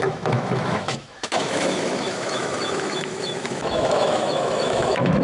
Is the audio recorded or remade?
remade